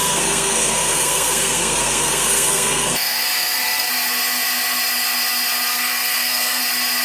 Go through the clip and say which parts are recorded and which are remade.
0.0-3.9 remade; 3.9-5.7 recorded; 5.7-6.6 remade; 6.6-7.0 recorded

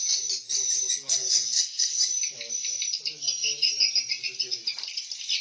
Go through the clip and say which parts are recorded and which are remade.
0.0-1.0 recorded; 1.0-2.0 remade; 2.0-5.4 recorded

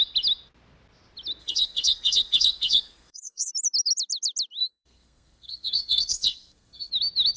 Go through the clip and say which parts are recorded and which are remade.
0.0-1.4 recorded; 1.4-3.5 remade; 3.5-4.6 recorded; 4.6-6.9 remade; 6.9-7.4 recorded

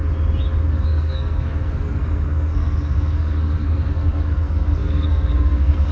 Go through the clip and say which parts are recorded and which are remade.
0.0-0.7 recorded; 0.7-5.9 remade

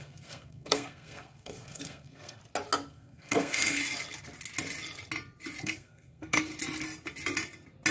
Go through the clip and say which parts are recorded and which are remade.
0.0-2.4 remade; 2.4-2.9 recorded; 2.9-3.8 remade; 3.8-5.6 recorded; 5.6-6.5 remade; 6.5-7.9 recorded

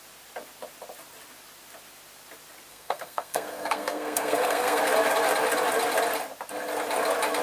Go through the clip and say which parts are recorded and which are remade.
0.0-2.7 recorded; 2.7-4.8 remade; 4.8-7.4 recorded